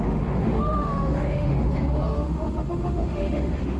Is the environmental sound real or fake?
fake